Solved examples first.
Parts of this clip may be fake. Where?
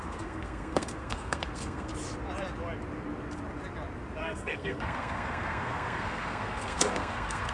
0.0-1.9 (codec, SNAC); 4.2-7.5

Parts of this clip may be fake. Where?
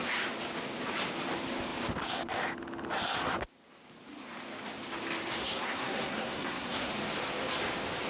5.4-6.9 (codec, SNAC)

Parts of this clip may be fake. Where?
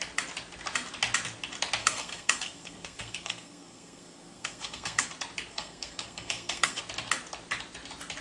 1.8-5.1 (codec, SNAC); 5.5-6.8